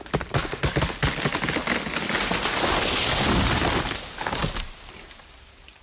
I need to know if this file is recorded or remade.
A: recorded